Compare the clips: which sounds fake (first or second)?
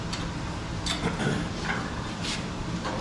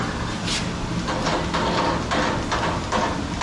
first